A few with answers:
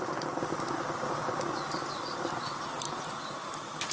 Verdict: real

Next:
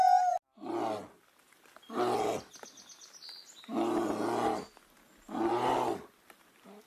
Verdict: real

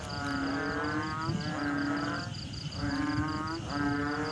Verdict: real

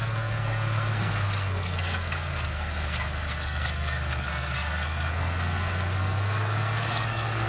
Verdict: fake